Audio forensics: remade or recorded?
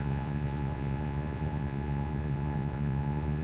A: remade